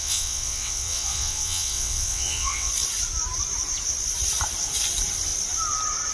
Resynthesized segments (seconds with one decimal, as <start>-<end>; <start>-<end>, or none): 0.0-2.7

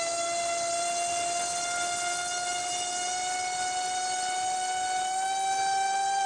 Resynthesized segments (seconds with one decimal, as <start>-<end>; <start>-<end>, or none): none